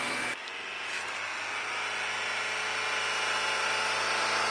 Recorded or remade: recorded